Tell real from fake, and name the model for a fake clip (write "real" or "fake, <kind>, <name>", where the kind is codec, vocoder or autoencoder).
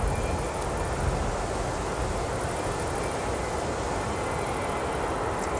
real